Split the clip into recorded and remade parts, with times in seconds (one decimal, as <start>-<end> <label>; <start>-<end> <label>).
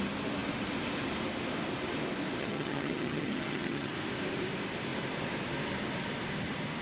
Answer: 0.0-2.4 recorded; 2.4-3.9 remade; 3.9-6.8 recorded